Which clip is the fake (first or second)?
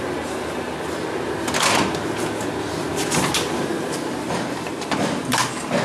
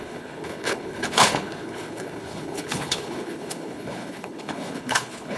second